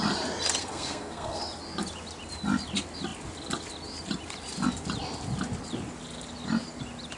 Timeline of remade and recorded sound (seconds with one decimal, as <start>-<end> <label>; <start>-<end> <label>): 0.0-0.6 recorded; 0.6-1.4 remade; 1.4-7.2 recorded